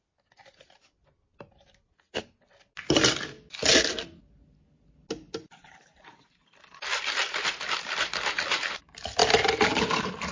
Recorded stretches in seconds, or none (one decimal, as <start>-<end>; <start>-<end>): 0.0-9.2